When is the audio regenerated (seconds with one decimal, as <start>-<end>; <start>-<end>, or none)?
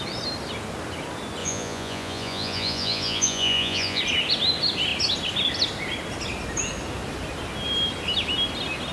1.4-4.0